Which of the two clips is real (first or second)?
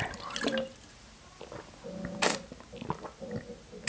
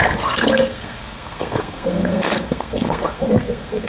first